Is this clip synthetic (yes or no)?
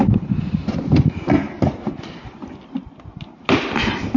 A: no